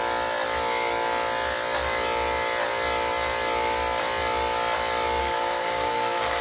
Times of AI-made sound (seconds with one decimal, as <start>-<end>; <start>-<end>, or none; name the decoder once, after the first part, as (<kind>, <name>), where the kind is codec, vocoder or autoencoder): 5.2-6.4 (codec, SNAC)